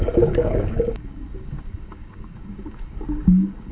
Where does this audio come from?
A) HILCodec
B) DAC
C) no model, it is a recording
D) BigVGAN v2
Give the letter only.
B